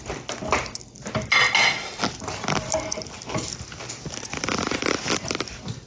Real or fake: real